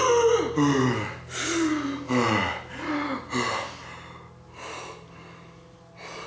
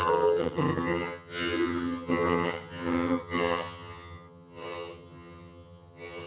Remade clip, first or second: second